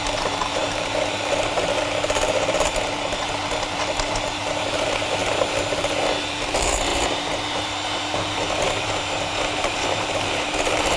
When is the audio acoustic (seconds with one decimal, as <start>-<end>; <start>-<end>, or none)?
5.2-6.2